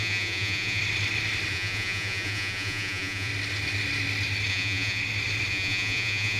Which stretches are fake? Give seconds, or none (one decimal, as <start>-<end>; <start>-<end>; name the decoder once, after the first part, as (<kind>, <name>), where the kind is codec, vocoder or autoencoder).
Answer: 0.0-0.8 (vocoder, Vocos); 1.5-3.3; 4.5-5.0; 5.5-6.4